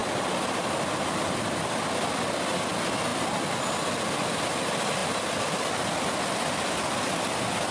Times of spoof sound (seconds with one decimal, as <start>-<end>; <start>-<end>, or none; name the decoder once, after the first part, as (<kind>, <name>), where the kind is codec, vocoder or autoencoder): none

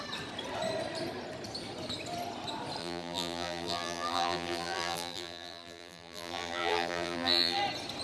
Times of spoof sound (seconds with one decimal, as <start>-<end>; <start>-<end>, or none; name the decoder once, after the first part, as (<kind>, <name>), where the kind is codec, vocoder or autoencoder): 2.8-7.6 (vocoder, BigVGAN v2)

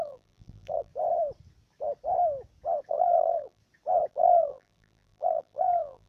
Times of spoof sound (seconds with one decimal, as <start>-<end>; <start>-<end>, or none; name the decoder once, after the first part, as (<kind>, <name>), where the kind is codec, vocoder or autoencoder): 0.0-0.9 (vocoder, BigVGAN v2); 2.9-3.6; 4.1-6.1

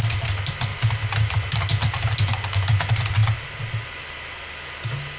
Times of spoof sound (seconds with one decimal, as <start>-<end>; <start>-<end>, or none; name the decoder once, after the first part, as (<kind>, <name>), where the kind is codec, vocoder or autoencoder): none

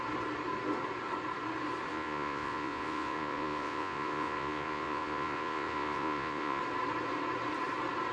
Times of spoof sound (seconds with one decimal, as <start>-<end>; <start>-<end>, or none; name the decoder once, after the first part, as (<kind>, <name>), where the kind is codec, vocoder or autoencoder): 1.9-6.6 (vocoder, Vocos)

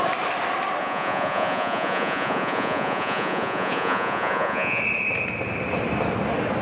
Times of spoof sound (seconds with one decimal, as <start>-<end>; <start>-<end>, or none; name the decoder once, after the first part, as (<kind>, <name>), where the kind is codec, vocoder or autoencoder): 0.8-4.8 (vocoder, Vocos)

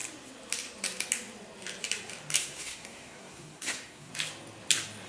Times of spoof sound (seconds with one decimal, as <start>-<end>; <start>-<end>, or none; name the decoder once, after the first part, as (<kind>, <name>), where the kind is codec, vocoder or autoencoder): 2.4-4.1 (codec, SNAC)